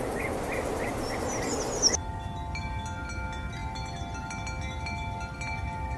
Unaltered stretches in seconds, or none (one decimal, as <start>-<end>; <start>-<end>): 0.0-6.0